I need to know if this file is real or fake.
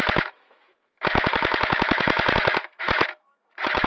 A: fake